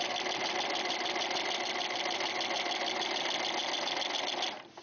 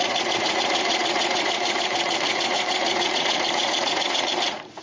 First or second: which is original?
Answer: first